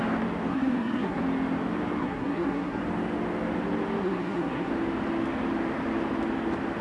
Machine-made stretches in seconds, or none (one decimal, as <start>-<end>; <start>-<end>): 0.5-1.2; 2.0-2.8; 4.0-4.7